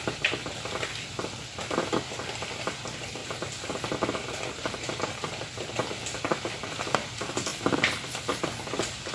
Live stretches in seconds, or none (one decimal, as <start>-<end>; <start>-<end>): 0.0-3.2; 5.1-9.1